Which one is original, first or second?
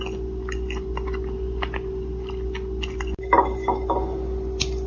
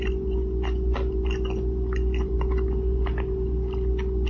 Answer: first